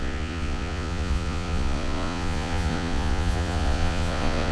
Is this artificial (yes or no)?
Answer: yes